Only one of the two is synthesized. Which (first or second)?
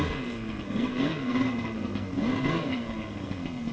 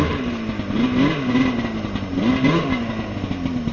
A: first